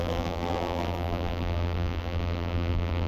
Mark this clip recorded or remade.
remade